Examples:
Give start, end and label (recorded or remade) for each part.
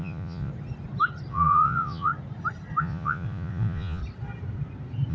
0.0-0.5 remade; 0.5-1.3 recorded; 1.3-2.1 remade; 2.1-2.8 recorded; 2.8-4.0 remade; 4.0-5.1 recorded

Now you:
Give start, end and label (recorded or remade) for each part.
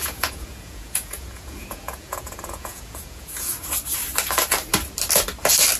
0.0-3.5 remade; 3.5-5.8 recorded